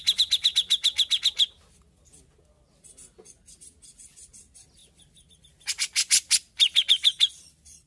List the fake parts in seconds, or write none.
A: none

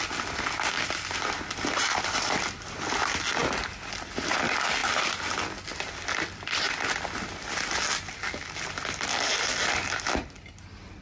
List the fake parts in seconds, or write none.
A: none

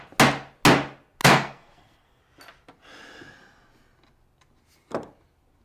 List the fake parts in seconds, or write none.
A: 1.2-2.2

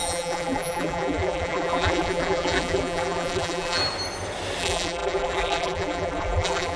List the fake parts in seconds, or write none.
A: 0.0-3.8; 4.6-6.8

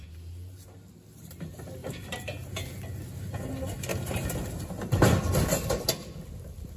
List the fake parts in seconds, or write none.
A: none

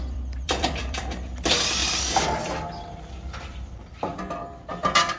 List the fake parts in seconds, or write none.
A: 0.0-1.8; 3.0-4.1